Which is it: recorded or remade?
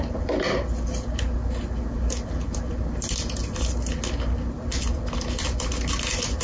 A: recorded